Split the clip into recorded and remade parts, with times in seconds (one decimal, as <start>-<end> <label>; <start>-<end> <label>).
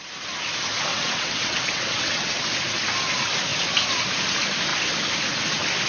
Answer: 0.0-0.9 recorded; 0.9-2.5 remade; 2.5-5.9 recorded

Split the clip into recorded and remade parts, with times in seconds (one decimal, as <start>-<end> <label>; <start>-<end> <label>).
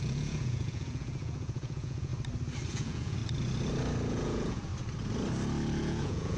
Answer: 0.0-2.1 remade; 2.1-2.7 recorded; 2.7-3.2 remade; 3.2-4.1 recorded; 4.1-4.7 remade; 4.7-5.8 recorded; 5.8-6.4 remade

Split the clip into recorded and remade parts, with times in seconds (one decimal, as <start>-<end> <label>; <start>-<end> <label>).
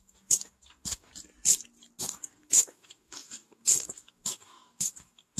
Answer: 0.0-1.1 remade; 1.1-2.0 recorded; 2.0-5.4 remade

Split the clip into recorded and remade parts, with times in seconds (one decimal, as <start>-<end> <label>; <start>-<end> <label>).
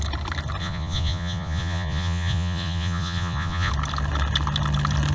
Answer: 0.0-0.6 recorded; 0.6-3.7 remade; 3.7-5.1 recorded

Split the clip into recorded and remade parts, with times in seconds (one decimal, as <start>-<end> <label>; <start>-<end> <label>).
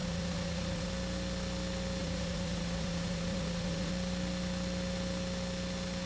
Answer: 0.0-0.9 remade; 0.9-2.0 recorded; 2.0-3.9 remade; 3.9-6.1 recorded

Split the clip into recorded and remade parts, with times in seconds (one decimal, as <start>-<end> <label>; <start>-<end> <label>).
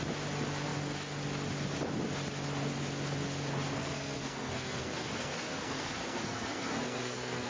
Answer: 0.0-3.8 recorded; 3.8-7.5 remade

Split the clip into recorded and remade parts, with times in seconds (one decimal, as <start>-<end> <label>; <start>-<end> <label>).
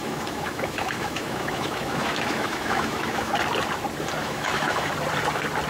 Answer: 0.0-3.3 remade; 3.3-4.2 recorded; 4.2-4.9 remade; 4.9-5.7 recorded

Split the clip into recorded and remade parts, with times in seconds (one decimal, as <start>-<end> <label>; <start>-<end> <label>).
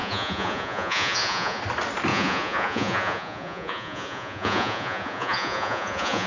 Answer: 0.0-1.6 remade; 1.6-2.1 recorded; 2.1-6.3 remade